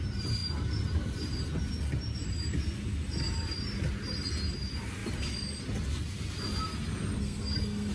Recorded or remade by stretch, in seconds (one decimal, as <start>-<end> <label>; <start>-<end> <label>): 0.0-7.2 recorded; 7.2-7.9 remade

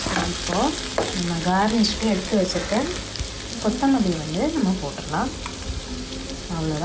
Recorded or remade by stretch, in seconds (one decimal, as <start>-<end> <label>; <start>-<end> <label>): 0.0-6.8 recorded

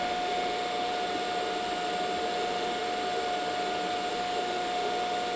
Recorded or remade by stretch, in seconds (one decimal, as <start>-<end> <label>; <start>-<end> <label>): 0.0-0.9 remade; 0.9-2.3 recorded; 2.3-2.8 remade; 2.8-4.1 recorded; 4.1-5.4 remade

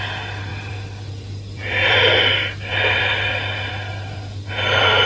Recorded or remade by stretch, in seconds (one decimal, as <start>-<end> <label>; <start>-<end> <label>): 0.0-0.5 recorded; 0.5-2.3 remade; 2.3-5.1 recorded

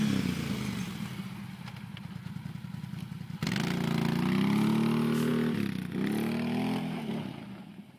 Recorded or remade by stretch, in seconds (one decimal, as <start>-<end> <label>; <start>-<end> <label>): 0.0-8.0 recorded

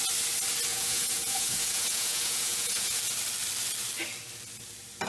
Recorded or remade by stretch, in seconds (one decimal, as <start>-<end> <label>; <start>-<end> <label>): 0.0-0.7 recorded; 0.7-3.0 remade; 3.0-5.1 recorded

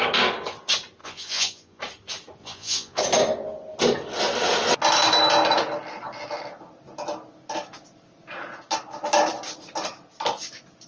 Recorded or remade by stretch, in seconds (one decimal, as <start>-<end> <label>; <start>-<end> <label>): 0.0-1.0 recorded; 1.0-1.8 remade; 1.8-2.4 recorded; 2.4-3.0 remade; 3.0-10.9 recorded